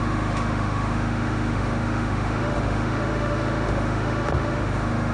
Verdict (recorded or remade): remade